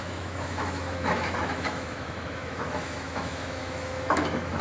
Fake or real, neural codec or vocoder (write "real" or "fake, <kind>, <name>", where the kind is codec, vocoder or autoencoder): fake, autoencoder, DAC-VAE